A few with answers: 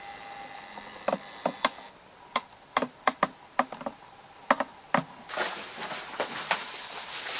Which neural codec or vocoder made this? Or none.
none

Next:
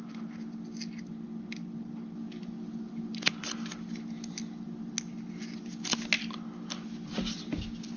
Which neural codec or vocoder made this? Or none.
none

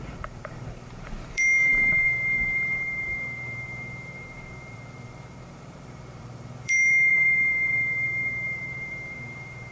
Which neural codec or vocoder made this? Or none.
vocoder, BigVGAN v2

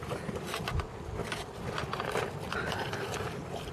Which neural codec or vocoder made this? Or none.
none